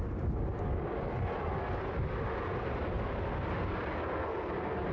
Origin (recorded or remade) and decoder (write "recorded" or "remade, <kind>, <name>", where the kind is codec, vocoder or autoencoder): recorded